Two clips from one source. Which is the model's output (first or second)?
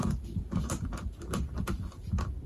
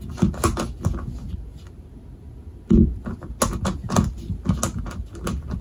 first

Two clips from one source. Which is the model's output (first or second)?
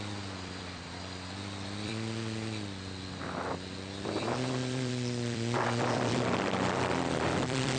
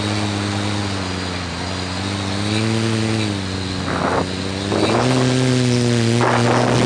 first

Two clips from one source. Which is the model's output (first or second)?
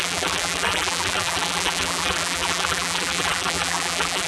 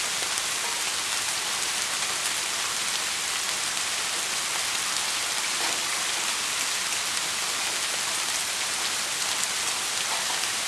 first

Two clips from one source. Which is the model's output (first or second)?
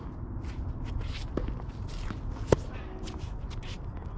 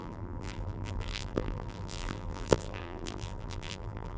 second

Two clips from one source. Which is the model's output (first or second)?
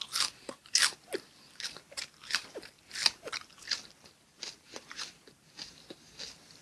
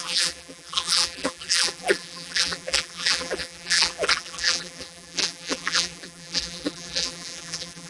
second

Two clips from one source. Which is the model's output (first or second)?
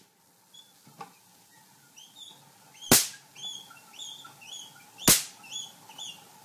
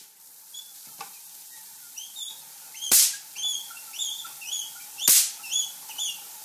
second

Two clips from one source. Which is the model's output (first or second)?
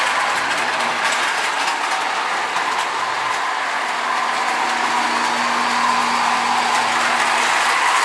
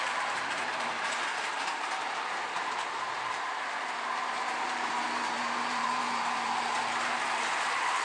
second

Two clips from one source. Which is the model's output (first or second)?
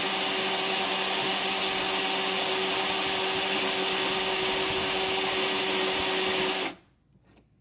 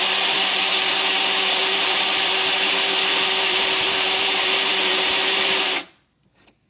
second